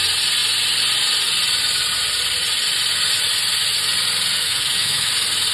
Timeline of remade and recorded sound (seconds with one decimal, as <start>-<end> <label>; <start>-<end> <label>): 0.0-4.4 recorded; 4.4-5.1 remade; 5.1-5.5 recorded